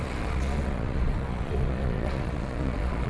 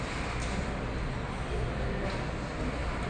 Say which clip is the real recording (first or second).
second